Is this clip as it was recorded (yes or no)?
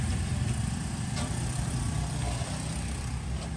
no